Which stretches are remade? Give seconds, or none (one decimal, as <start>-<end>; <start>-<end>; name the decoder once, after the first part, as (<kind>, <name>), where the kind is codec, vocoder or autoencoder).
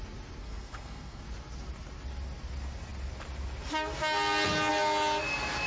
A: 0.4-1.2 (codec, SNAC)